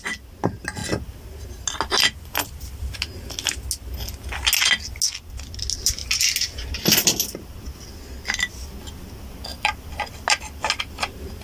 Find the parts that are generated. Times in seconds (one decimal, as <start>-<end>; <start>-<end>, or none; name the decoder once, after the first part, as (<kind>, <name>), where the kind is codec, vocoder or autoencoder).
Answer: 9.5-10.4 (vocoder, BigVGAN v2)